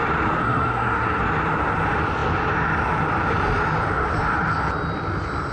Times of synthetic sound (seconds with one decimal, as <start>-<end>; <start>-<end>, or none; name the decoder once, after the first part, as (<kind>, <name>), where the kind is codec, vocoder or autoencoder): 0.4-1.2 (codec, SNAC)